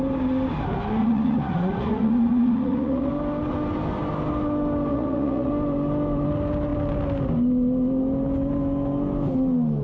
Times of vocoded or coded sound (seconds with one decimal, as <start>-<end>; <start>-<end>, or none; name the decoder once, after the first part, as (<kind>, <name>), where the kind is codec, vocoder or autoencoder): 1.0-3.1 (vocoder, Vocos); 4.9-5.5